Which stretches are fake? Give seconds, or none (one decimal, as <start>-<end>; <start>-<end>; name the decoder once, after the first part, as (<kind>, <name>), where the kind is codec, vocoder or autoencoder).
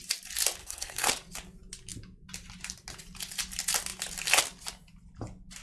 0.6-1.1 (codec, SNAC)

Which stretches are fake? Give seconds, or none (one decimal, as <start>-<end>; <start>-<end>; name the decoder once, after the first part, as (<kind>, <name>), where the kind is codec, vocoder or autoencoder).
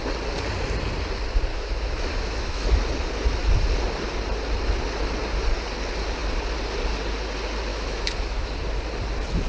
1.5-2.8 (autoencoder, DAC-VAE); 7.7-8.6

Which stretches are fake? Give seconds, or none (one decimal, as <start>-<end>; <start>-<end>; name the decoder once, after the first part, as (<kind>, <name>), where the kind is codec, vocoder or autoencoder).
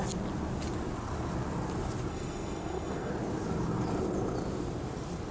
2.1-3.1 (codec, SNAC)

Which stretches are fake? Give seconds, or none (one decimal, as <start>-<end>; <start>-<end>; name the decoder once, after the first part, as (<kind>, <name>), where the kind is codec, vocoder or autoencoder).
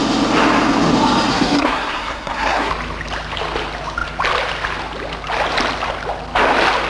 1.3-2.7 (codec, SNAC)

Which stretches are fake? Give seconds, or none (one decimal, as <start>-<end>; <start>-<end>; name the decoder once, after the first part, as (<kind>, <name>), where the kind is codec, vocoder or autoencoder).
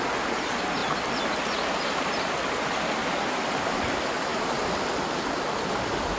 none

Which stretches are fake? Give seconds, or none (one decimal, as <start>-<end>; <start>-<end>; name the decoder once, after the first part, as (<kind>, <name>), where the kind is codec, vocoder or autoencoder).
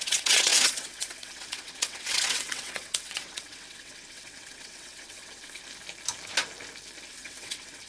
0.0-5.6 (vocoder, WaveNeXt); 7.1-7.9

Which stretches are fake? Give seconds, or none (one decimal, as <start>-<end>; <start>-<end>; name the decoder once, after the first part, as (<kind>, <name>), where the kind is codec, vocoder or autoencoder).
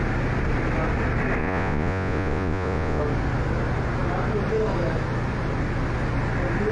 1.4-3.0 (vocoder, Vocos)